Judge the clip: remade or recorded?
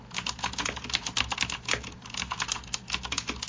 recorded